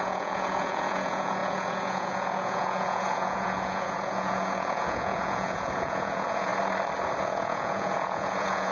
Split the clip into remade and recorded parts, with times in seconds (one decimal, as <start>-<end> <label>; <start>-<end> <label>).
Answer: 0.0-6.5 remade; 6.5-7.2 recorded; 7.2-8.7 remade